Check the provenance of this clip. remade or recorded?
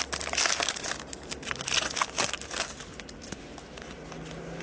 recorded